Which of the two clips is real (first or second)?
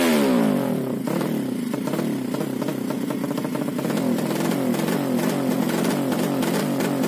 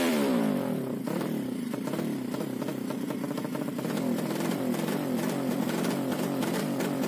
first